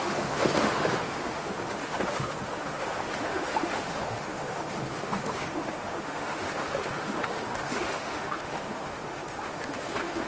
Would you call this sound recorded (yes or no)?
no